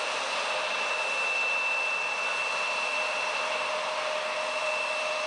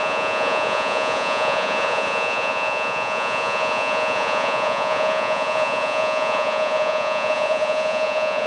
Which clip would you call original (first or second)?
first